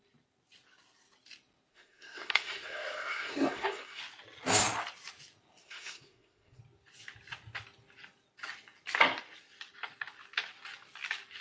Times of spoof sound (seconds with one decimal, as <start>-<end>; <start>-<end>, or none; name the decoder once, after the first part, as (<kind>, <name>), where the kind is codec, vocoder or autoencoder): 1.7-4.0 (codec, SNAC); 5.6-6.6